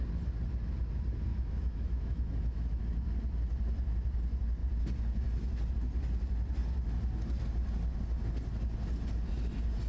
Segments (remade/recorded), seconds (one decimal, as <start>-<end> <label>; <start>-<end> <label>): 0.0-1.3 recorded; 1.3-2.8 remade; 2.8-9.9 recorded